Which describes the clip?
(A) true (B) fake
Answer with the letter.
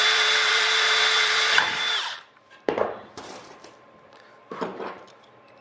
B